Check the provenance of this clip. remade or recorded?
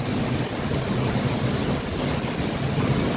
recorded